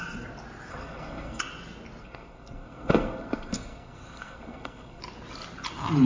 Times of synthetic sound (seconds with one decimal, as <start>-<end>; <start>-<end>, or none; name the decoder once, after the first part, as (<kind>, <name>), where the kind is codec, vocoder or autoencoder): 0.7-1.4 (codec, SNAC); 2.0-5.0